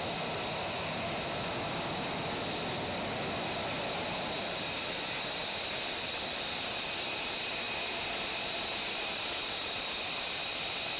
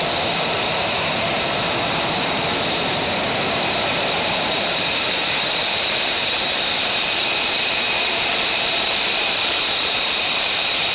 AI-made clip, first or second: second